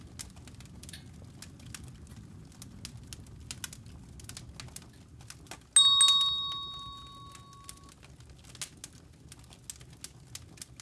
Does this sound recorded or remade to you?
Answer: recorded